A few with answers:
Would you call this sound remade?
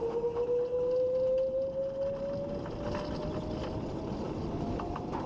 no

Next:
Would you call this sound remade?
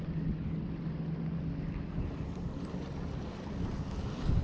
no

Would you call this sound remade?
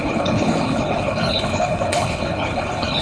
yes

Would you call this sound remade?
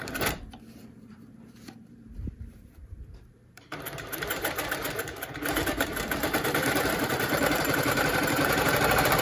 yes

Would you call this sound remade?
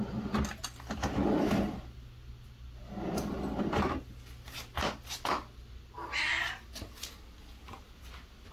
no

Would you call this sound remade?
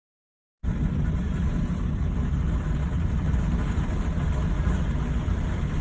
no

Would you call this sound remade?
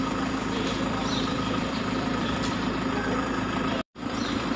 yes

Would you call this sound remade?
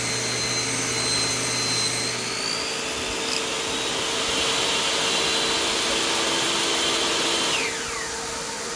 no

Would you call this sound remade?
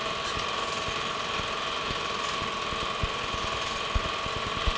yes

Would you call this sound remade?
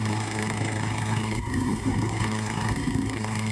yes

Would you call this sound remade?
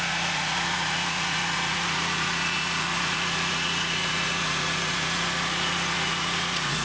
yes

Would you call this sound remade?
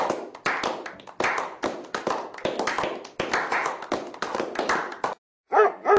no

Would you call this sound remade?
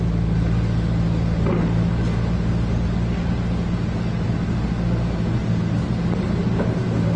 no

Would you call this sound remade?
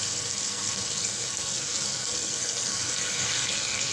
yes